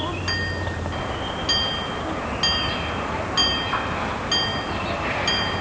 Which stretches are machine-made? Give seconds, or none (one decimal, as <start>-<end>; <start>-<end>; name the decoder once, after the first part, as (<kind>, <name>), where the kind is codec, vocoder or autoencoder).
4.5-5.6 (vocoder, BigVGAN v2)